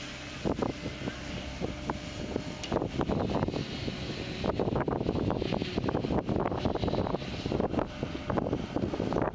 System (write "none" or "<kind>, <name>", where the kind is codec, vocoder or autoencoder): none